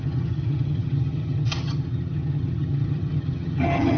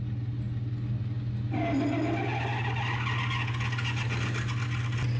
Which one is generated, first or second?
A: first